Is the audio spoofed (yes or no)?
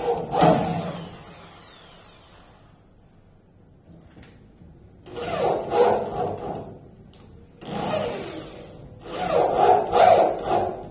no